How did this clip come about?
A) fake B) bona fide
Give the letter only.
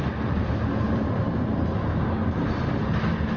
B